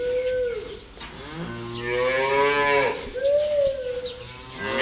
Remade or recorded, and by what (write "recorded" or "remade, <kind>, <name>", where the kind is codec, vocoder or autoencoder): recorded